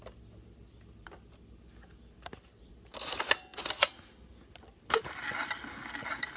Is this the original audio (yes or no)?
yes